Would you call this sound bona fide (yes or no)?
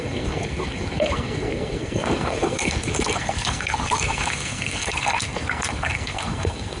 no